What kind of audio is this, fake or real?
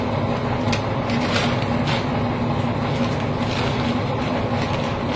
real